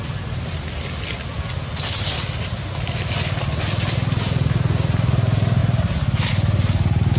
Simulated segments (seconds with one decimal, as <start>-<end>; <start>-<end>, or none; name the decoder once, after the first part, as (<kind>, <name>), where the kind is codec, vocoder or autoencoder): none